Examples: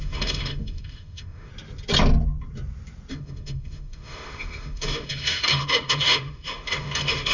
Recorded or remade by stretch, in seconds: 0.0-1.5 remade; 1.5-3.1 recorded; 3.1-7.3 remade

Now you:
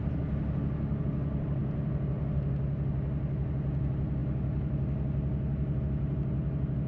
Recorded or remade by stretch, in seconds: 0.0-6.9 recorded

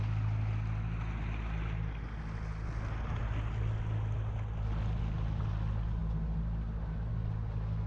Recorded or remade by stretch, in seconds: 0.0-7.9 recorded

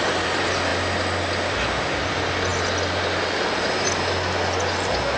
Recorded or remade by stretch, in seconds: 0.0-5.2 recorded

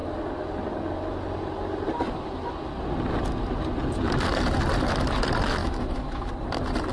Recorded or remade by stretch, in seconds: 0.0-5.6 recorded; 5.6-6.3 remade; 6.3-6.9 recorded

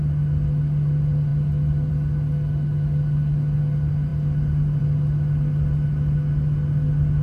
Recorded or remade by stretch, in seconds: 0.0-7.2 recorded

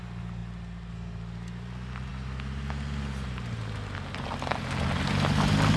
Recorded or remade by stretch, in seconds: 0.0-5.8 recorded